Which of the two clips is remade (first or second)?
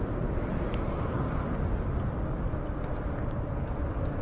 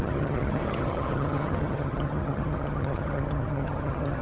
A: second